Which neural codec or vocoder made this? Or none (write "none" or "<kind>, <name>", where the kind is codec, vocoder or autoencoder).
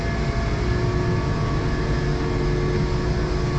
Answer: none